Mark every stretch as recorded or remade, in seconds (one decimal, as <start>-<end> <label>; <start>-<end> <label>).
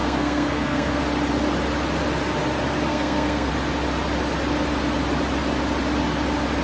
0.0-1.0 remade; 1.0-2.9 recorded; 2.9-3.5 remade; 3.5-6.6 recorded